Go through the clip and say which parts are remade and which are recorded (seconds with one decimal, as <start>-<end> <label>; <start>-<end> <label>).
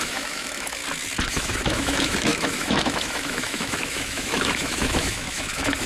0.0-0.8 remade; 0.8-1.3 recorded; 1.3-5.9 remade